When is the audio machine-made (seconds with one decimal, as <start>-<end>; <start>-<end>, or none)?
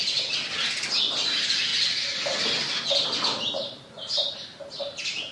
none